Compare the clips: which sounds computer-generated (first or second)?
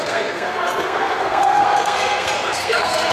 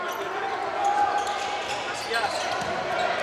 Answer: first